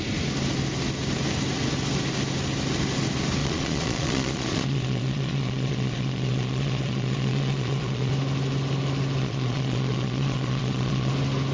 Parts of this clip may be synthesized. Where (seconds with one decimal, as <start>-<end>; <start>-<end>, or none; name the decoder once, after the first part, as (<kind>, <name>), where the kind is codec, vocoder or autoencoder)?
3.4-8.1 (vocoder, Vocos); 9.2-11.1